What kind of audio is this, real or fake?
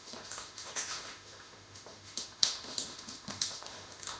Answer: fake